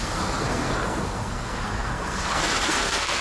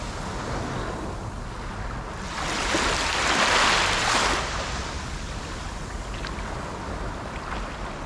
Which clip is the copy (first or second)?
first